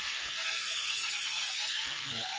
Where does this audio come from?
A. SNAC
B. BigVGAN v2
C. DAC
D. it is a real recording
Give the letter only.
A